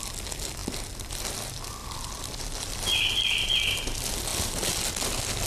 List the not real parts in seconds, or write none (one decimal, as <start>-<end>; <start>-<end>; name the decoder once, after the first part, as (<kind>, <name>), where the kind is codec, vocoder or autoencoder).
1.8-3.5 (vocoder, BigVGAN v2); 4.3-4.9